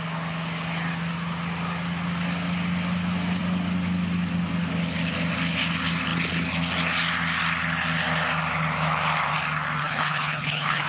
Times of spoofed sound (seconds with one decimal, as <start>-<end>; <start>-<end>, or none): 9.8-10.9